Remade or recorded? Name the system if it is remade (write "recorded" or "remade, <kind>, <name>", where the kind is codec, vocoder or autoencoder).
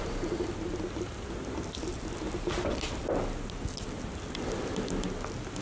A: recorded